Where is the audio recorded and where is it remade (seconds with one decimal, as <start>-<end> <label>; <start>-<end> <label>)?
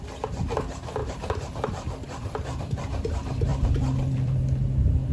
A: 0.0-1.0 recorded; 1.0-2.6 remade; 2.6-3.5 recorded; 3.5-4.4 remade; 4.4-5.1 recorded